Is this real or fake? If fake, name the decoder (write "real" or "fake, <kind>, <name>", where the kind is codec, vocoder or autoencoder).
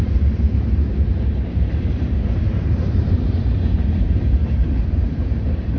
fake, vocoder, BigVGAN v2